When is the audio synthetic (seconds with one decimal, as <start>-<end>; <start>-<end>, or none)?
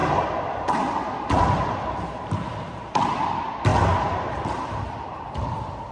none